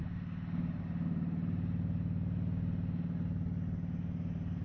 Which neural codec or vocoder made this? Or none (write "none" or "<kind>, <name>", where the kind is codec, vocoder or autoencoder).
none